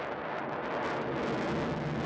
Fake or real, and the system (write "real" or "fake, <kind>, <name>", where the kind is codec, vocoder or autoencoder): real